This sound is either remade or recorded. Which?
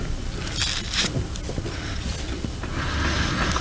recorded